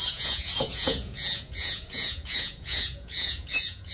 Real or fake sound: fake